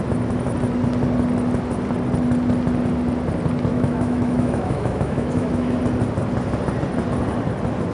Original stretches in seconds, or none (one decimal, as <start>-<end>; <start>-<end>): 0.0-3.7; 5.8-7.9